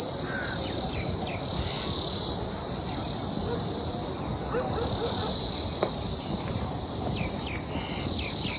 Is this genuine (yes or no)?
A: yes